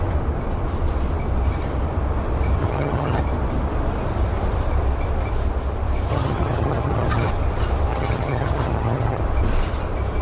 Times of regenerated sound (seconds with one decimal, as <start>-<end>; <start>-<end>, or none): 2.6-3.2; 6.1-7.3; 7.9-9.2